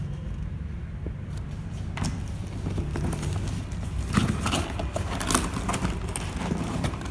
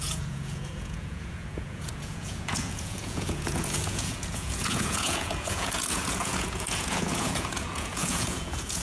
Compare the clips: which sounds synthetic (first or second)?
second